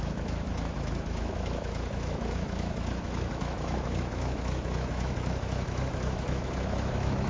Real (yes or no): no